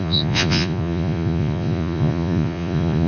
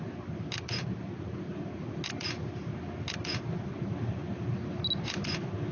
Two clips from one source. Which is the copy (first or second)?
first